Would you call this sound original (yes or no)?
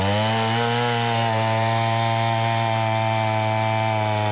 yes